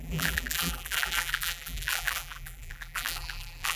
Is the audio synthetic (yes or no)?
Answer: yes